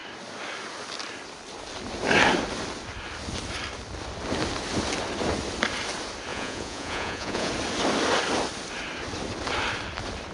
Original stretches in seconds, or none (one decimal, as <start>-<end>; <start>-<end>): 0.0-6.3; 7.5-10.3

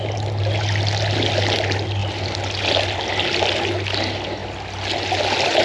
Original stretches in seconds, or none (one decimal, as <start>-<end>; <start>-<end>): 0.0-5.6

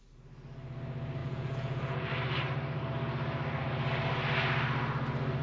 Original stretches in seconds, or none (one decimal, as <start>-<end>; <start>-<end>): 0.0-1.2; 2.1-5.4

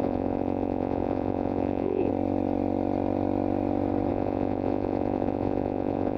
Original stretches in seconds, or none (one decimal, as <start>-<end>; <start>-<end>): 2.1-4.1

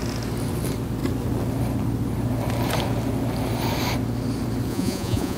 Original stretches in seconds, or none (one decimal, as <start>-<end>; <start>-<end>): 0.0-4.7

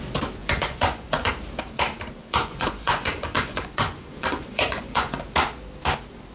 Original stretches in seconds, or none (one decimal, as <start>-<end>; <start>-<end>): 0.0-0.4; 1.3-2.2; 5.2-6.3

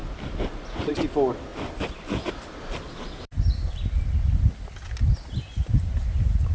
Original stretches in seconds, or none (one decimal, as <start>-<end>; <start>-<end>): 0.0-6.5

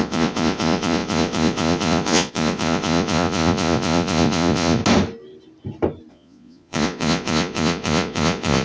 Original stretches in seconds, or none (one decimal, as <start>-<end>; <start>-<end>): 4.8-6.1